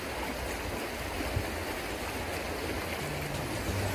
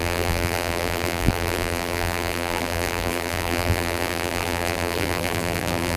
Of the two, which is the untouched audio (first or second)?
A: first